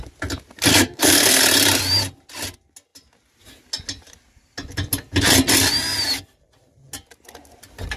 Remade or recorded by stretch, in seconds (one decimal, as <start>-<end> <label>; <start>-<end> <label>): 0.0-0.7 recorded; 0.7-1.4 remade; 1.4-8.0 recorded